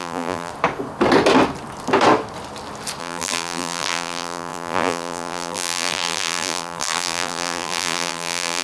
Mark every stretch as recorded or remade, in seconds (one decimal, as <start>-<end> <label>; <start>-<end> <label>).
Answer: 0.0-0.5 remade; 0.5-3.0 recorded; 3.0-8.6 remade

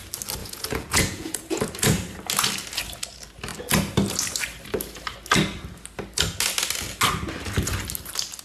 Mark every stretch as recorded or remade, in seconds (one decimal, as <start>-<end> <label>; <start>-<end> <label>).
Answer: 0.0-0.4 recorded; 0.4-1.6 remade; 1.6-8.4 recorded

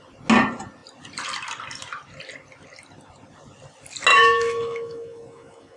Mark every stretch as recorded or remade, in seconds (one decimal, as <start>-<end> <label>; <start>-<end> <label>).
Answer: 0.0-4.1 recorded; 4.1-5.8 remade

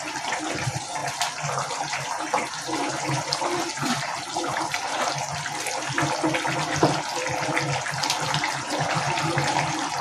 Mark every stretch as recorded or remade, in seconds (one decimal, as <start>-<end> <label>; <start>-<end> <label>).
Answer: 0.0-1.0 remade; 1.0-1.7 recorded; 1.7-5.1 remade; 5.1-8.5 recorded; 8.5-10.0 remade